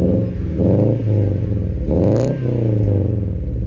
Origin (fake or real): real